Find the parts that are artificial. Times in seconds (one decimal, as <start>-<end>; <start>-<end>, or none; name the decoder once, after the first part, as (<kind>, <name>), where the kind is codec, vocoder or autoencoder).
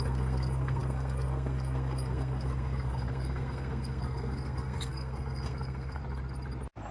0.0-6.0 (codec, SNAC)